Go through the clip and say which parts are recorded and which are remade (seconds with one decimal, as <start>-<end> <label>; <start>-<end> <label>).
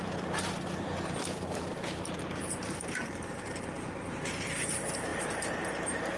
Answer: 0.0-3.5 remade; 3.5-5.1 recorded; 5.1-5.7 remade; 5.7-6.2 recorded